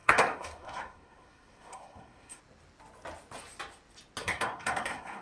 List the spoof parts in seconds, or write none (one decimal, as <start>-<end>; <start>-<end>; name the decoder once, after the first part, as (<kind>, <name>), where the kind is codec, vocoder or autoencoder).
0.0-2.4 (codec, SNAC); 4.2-5.2